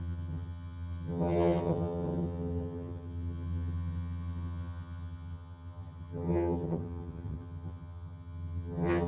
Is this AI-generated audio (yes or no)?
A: yes